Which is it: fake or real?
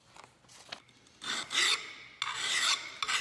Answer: real